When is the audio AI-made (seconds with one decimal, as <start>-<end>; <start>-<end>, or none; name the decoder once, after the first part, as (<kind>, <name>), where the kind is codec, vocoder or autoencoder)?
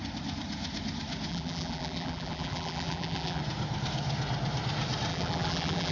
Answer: 1.3-3.4 (vocoder, BigVGAN v2); 5.1-5.9